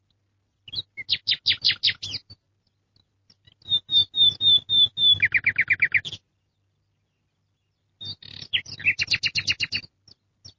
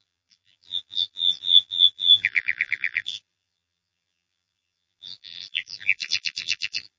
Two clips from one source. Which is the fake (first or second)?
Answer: second